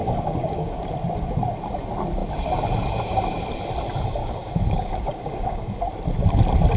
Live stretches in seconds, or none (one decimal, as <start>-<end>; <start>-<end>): 0.8-4.2; 5.8-6.8